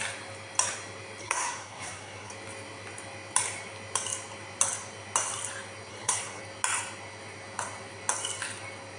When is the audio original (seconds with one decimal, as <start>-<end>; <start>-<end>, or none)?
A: 0.0-1.2; 2.3-5.9; 6.4-9.0